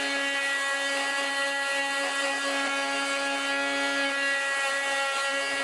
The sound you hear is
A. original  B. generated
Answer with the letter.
A